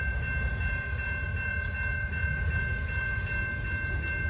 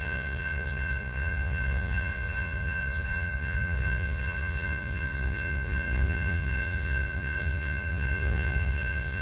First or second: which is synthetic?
second